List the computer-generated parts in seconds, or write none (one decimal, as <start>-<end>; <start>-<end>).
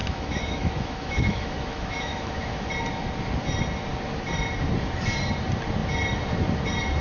0.0-2.7